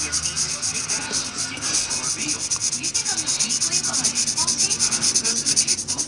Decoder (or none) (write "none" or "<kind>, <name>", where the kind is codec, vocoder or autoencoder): none